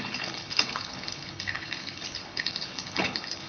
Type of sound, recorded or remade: remade